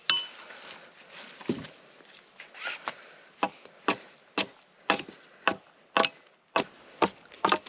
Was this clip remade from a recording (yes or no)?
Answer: no